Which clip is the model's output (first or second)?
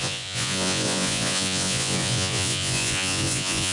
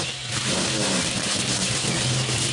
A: first